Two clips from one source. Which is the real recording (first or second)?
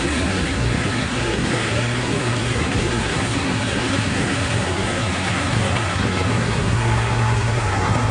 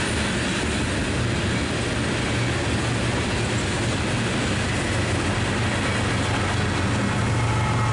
second